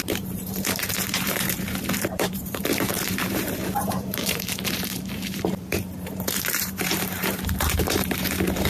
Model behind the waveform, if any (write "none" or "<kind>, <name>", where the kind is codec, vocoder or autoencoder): vocoder, BigVGAN v2